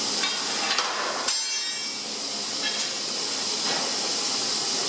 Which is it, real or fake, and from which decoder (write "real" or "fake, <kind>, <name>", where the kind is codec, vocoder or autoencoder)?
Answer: real